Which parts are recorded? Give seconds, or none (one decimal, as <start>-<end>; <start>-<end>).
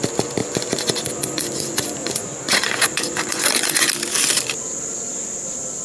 0.0-0.4; 3.9-5.8